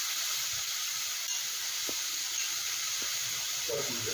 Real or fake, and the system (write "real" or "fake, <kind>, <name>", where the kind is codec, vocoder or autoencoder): real